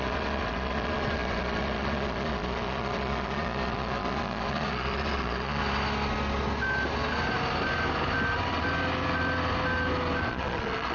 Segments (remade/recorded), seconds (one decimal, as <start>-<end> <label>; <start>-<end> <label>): 0.0-5.6 remade; 5.6-10.2 recorded; 10.2-10.9 remade